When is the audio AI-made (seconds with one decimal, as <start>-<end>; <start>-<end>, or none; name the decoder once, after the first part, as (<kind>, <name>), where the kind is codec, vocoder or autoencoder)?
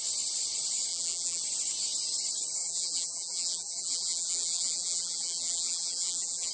0.9-1.4 (vocoder, BigVGAN v2); 2.6-6.5